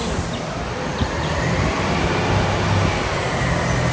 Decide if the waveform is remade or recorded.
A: recorded